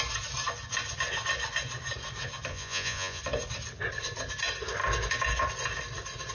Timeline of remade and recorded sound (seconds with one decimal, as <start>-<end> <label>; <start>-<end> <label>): 0.0-2.5 recorded; 2.5-3.2 remade; 3.2-6.3 recorded